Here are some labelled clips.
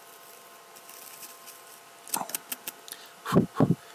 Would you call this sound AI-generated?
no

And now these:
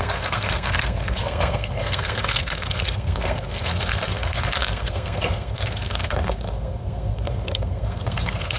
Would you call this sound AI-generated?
yes